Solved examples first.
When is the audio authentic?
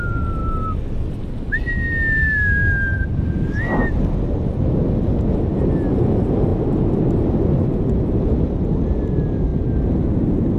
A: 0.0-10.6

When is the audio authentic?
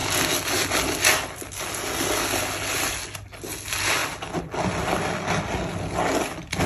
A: 0.0-6.7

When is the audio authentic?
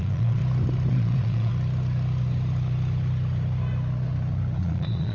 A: 0.4-0.9; 1.5-4.6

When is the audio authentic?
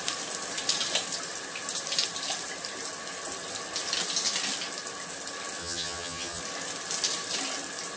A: 0.0-5.6; 6.4-8.0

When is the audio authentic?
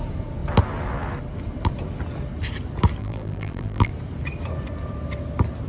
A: 0.0-3.0; 3.9-5.7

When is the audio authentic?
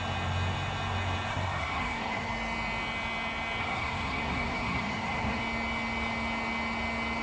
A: 0.0-1.3; 2.3-3.6; 5.4-7.2